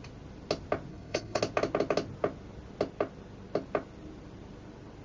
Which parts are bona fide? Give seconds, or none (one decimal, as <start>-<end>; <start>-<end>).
0.0-0.9; 1.4-5.0